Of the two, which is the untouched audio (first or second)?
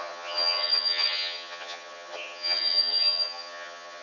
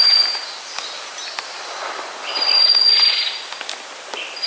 second